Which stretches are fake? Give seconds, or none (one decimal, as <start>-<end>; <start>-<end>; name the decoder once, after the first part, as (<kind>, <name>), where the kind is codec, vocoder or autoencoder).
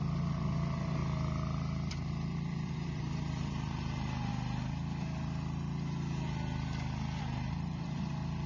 0.0-1.0 (vocoder, BigVGAN v2); 1.9-4.3; 7.2-8.5